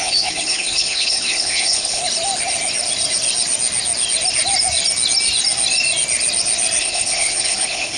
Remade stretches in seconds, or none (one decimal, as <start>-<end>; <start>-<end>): 0.0-2.0; 6.8-8.0